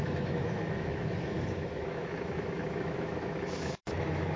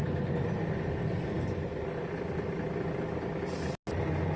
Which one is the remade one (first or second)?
first